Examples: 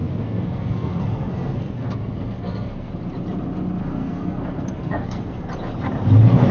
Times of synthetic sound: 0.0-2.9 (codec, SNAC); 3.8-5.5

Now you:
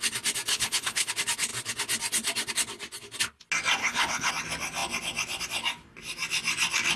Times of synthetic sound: 0.5-1.1 (codec, HILCodec); 3.8-4.3

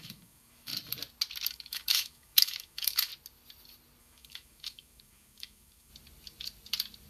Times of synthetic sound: 0.0-0.7 (autoencoder, DAC-VAE); 1.5-3.1; 4.0-5.9

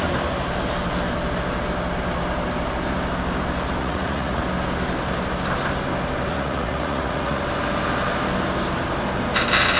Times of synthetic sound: 3.8-4.4 (vocoder, Vocos); 6.3-7.4

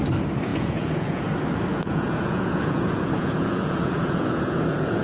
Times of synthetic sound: 0.5-1.2 (vocoder, Vocos); 1.7-5.0